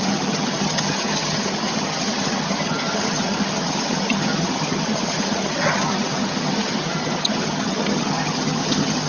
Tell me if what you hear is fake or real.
fake